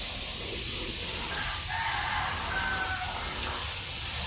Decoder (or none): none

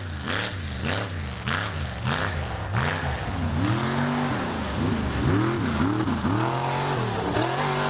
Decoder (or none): none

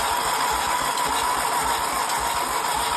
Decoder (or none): vocoder, BigVGAN v2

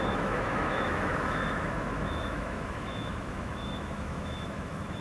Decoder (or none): autoencoder, DAC-VAE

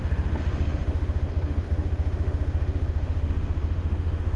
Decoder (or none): autoencoder, DAC-VAE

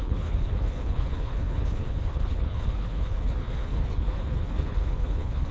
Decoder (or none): codec, HILCodec